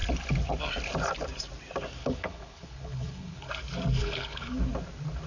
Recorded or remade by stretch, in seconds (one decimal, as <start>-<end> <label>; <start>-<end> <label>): 0.0-2.0 recorded; 2.0-3.5 remade; 3.5-4.0 recorded; 4.0-4.5 remade; 4.5-5.3 recorded